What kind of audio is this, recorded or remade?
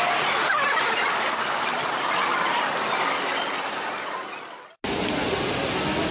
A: recorded